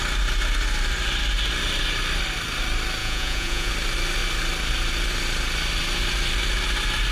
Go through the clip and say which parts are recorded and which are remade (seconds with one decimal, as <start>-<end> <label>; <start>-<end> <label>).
0.0-3.0 recorded; 3.0-3.7 remade; 3.7-7.1 recorded